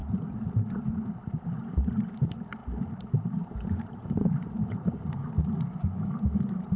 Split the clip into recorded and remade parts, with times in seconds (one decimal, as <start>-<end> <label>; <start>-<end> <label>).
0.0-2.6 recorded; 2.6-5.3 remade; 5.3-6.8 recorded